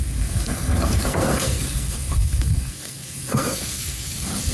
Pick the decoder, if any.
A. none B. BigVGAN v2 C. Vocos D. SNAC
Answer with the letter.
D